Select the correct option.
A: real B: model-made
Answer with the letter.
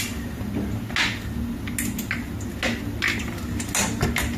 A